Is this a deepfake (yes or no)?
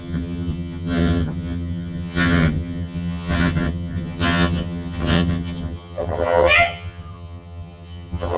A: yes